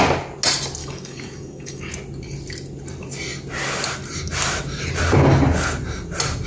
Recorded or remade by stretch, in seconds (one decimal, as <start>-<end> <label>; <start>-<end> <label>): 0.0-0.8 recorded; 0.8-1.9 remade; 1.9-6.5 recorded